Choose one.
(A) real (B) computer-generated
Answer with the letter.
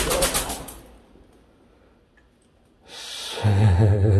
A